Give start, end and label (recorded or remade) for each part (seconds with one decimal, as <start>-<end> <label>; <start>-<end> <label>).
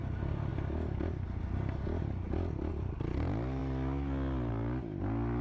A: 0.0-5.4 recorded